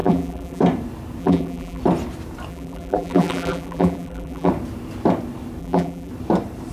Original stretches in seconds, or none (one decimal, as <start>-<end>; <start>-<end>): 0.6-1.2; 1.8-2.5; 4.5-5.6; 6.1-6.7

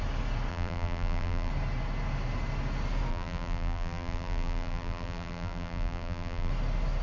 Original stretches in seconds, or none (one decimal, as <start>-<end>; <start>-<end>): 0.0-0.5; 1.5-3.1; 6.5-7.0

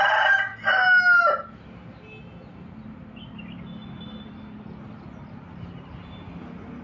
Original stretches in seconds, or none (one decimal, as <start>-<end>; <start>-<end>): 0.0-6.8

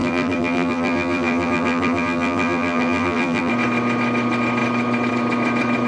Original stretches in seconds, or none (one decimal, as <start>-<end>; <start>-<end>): 3.5-5.9

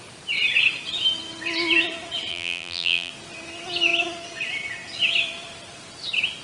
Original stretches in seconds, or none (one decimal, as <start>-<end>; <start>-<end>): 0.0-2.3; 3.1-6.4

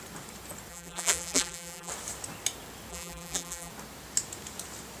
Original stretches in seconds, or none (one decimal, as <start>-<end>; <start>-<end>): 0.0-0.7; 1.9-2.9; 3.7-5.0

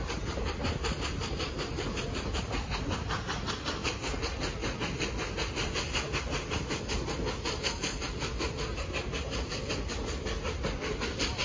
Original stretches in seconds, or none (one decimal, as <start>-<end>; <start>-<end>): 0.0-11.4

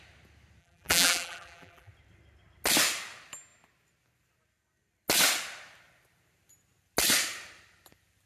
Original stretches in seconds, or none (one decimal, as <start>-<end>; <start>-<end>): 0.0-0.6; 1.9-8.3